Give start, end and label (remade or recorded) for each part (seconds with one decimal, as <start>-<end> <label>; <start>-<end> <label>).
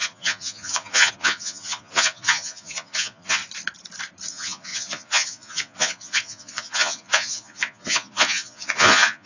0.0-3.4 remade; 3.4-4.3 recorded; 4.3-9.3 remade